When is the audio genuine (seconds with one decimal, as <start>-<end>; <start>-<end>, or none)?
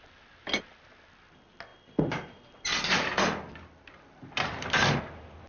0.0-5.5